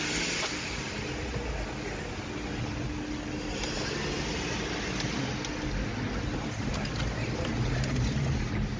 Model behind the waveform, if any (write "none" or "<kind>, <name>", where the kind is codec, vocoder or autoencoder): none